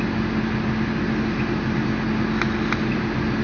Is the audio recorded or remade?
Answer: recorded